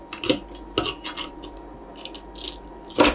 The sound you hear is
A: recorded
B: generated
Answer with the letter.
A